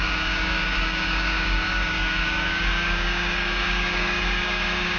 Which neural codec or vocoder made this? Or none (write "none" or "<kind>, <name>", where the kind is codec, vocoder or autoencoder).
codec, DAC